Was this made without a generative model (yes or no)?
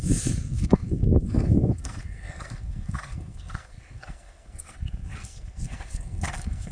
no